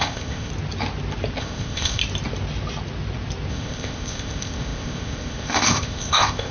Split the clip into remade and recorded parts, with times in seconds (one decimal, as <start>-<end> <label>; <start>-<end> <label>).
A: 0.0-0.5 remade; 0.5-1.4 recorded; 1.4-2.0 remade; 2.0-3.5 recorded; 3.5-6.5 remade